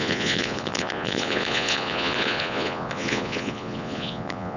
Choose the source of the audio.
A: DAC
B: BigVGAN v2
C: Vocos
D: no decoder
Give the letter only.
C